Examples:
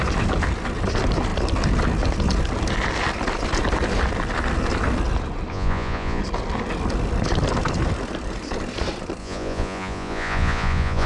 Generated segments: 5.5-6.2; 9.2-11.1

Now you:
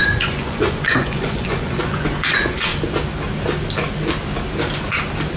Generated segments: 0.0-2.7